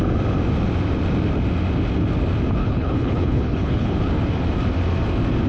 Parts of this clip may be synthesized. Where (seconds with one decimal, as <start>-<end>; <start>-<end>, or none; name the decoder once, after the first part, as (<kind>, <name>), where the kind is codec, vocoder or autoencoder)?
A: 2.6-3.9 (codec, HILCodec)